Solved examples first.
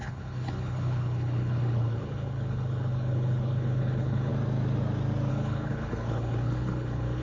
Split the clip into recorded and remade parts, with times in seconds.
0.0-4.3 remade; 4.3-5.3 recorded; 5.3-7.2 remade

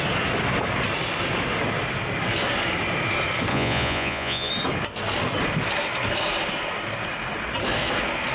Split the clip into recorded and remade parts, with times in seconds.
0.0-3.5 recorded; 3.5-4.5 remade; 4.5-8.3 recorded

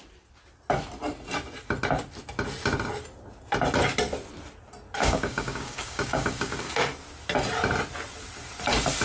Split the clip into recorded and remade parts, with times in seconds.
0.0-5.0 recorded; 5.0-6.8 remade; 6.8-9.0 recorded

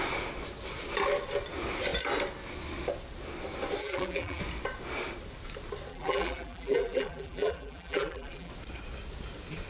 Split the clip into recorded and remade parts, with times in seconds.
0.0-3.8 recorded; 3.8-4.4 remade; 4.4-5.9 recorded; 5.9-8.5 remade; 8.5-9.7 recorded

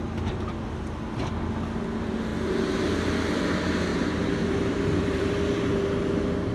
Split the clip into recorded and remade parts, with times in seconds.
0.0-2.3 recorded; 2.3-3.1 remade; 3.1-3.9 recorded; 3.9-5.3 remade; 5.3-6.5 recorded

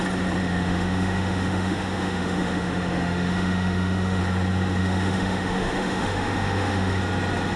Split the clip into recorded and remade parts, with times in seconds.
0.0-0.4 recorded; 0.4-4.2 remade; 4.2-4.8 recorded; 4.8-7.0 remade; 7.0-7.6 recorded

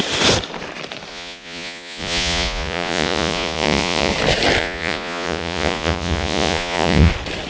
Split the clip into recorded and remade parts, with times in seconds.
0.0-1.1 recorded; 1.1-4.1 remade; 4.1-4.6 recorded; 4.6-7.1 remade; 7.1-7.5 recorded